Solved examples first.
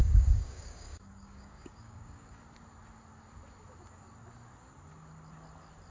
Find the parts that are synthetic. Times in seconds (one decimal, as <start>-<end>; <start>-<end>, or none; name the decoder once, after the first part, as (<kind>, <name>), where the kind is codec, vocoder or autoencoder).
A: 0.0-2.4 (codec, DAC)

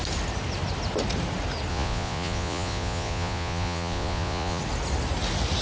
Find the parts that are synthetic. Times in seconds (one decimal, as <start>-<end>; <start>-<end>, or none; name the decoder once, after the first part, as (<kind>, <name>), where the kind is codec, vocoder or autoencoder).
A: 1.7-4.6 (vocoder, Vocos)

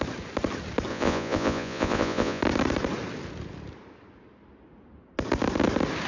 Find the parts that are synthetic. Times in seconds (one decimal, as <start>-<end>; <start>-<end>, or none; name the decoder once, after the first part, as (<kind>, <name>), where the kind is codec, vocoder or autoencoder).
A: 0.9-2.4 (vocoder, Vocos)

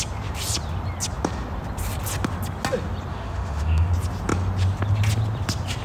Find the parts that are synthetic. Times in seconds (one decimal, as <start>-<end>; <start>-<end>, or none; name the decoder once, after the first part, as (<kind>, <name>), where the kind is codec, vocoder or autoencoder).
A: 3.1-3.9 (autoencoder, DAC-VAE)